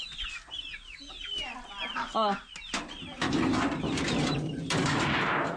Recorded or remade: recorded